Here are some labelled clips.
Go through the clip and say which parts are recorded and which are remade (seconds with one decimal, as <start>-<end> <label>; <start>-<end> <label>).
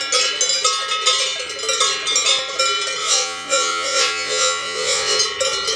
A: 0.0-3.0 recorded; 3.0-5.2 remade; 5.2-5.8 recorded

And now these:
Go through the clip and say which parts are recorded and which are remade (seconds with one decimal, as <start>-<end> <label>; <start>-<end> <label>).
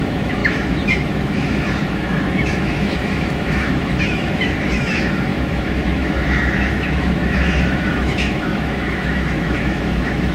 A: 0.0-10.3 remade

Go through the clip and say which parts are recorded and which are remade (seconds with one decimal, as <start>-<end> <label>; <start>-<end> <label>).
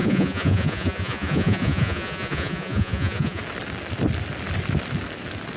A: 0.0-3.4 remade; 3.4-5.6 recorded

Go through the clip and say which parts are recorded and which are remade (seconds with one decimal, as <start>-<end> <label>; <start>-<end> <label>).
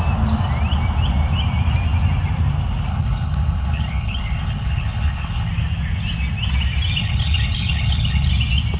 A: 0.0-2.9 recorded; 2.9-5.5 remade; 5.5-7.0 recorded; 7.0-8.3 remade; 8.3-8.8 recorded